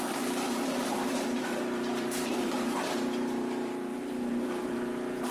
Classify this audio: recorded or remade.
remade